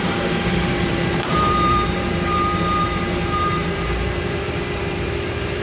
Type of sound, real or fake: fake